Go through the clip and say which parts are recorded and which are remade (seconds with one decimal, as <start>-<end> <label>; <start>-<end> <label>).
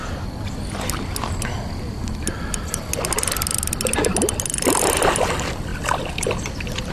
0.0-6.9 recorded